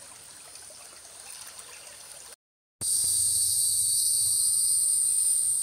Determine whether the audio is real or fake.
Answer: real